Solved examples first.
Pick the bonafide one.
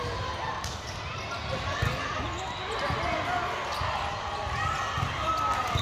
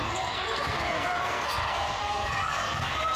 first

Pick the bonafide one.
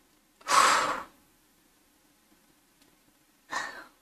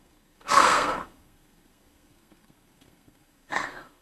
first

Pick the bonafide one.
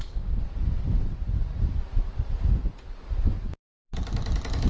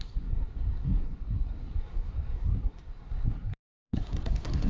first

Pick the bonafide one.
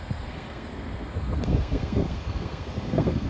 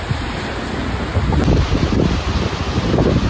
second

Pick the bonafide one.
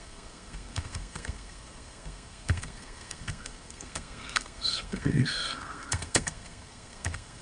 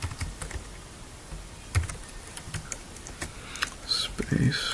second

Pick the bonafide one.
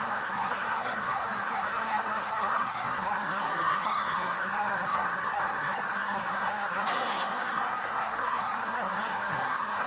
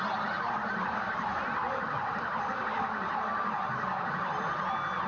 second